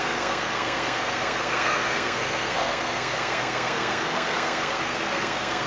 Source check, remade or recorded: remade